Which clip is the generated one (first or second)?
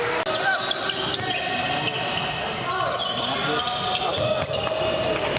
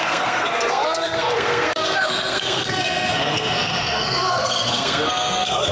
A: second